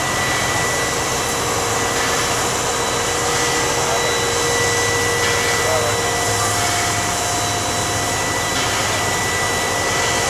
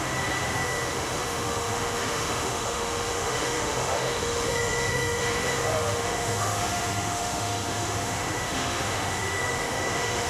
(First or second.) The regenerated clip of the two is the second